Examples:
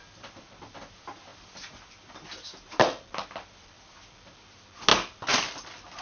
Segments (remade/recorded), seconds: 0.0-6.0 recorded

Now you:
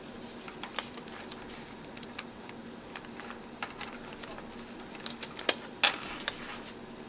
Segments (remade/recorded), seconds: 0.0-7.1 recorded

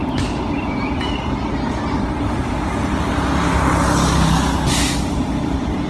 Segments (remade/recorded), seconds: 0.0-5.9 recorded

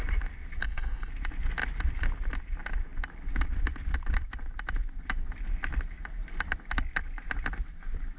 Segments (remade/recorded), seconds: 0.0-0.6 recorded; 0.6-1.1 remade; 1.1-8.2 recorded

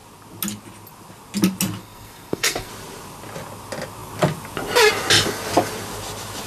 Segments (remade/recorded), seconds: 0.0-1.8 recorded; 1.8-2.7 remade; 2.7-6.5 recorded

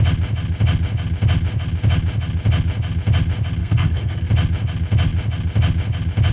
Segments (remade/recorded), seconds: 0.0-3.6 recorded; 3.6-4.3 remade; 4.3-6.3 recorded

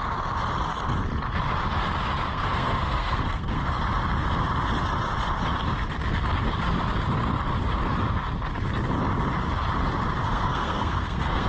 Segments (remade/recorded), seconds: 0.0-2.3 recorded; 2.3-3.7 remade; 3.7-10.2 recorded; 10.2-11.5 remade